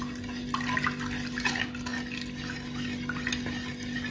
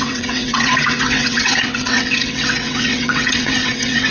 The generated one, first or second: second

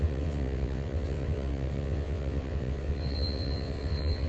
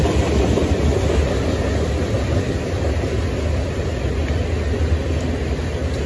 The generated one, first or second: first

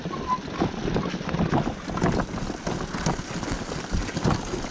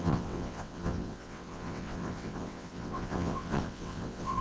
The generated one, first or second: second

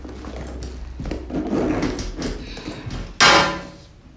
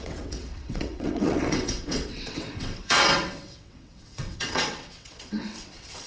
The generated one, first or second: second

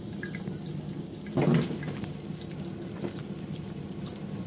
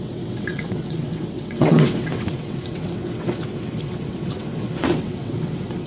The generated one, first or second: second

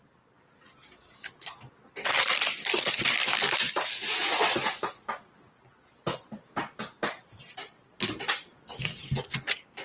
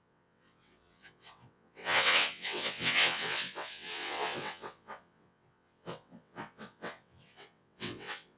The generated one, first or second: second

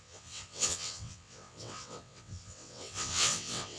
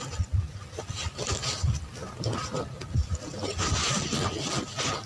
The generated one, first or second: first